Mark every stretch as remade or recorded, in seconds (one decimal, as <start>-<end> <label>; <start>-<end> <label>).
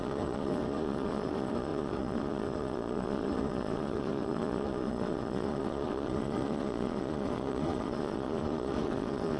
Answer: 0.0-9.4 remade